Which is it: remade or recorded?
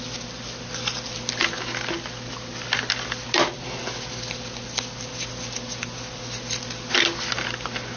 recorded